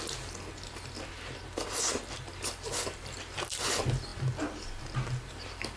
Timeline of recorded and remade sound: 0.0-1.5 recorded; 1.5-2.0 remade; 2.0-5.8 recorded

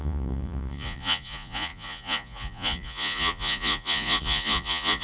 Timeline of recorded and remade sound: 0.0-5.0 remade

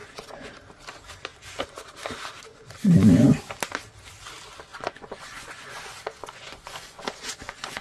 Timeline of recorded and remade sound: 0.0-0.5 remade; 0.5-2.5 recorded; 2.5-3.3 remade; 3.3-4.7 recorded; 4.7-7.8 remade